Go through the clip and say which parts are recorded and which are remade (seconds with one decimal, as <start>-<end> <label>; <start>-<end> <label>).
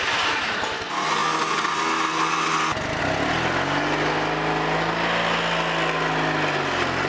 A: 0.0-7.1 recorded